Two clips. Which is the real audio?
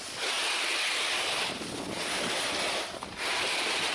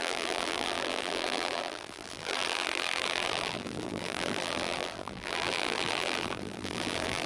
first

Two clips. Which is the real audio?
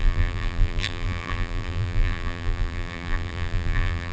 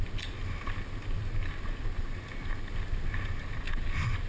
second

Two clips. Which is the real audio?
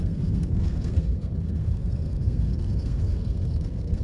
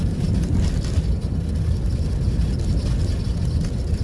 second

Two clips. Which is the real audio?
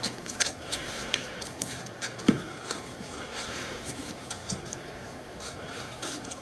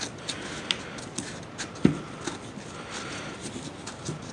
second